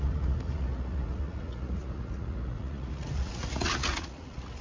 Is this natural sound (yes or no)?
no